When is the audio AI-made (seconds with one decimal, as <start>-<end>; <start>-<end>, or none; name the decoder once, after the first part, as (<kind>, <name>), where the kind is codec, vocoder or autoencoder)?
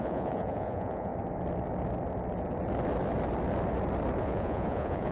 0.0-1.1 (vocoder, Vocos); 4.2-5.1